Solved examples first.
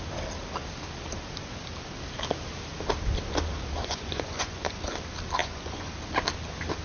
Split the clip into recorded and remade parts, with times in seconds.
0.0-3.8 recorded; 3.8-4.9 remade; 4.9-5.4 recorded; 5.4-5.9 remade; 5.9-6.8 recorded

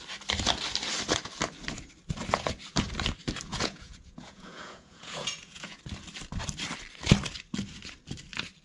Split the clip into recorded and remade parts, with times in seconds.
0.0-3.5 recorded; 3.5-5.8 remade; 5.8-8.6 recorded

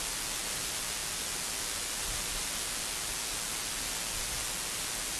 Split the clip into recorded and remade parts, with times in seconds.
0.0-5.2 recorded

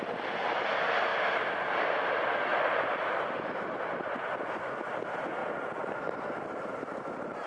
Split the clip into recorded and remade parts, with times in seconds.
0.0-7.5 recorded

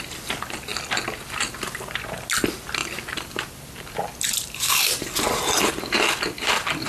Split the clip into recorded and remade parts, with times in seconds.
0.0-6.9 recorded